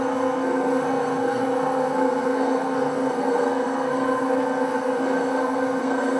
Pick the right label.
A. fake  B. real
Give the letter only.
A